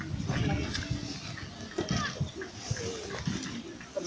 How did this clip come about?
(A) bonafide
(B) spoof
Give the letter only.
A